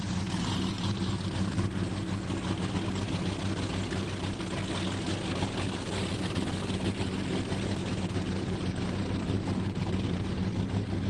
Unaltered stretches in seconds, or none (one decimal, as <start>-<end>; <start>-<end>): 1.8-6.1; 10.4-11.1